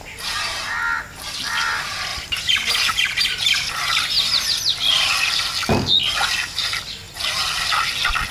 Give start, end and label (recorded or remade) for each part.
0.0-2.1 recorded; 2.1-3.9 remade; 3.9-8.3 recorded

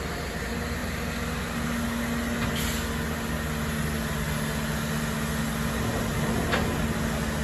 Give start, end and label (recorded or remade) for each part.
0.0-7.4 recorded

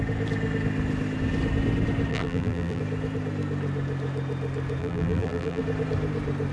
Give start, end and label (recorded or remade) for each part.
0.0-2.1 recorded; 2.1-2.8 remade; 2.8-4.8 recorded; 4.8-5.6 remade; 5.6-6.5 recorded